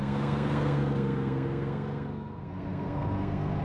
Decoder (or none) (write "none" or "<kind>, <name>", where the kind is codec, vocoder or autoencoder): codec, SNAC